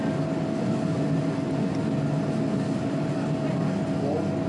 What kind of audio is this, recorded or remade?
recorded